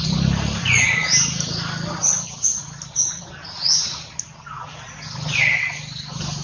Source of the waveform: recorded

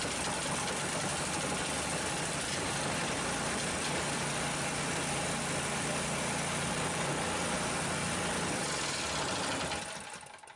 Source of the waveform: recorded